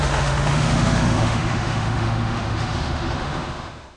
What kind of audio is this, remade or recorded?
remade